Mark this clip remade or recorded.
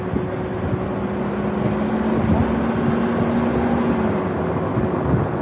recorded